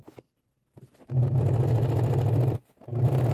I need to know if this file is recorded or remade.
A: remade